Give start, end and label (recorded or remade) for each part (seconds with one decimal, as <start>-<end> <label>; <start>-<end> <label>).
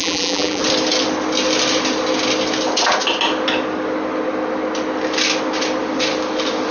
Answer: 0.0-0.6 remade; 0.6-6.7 recorded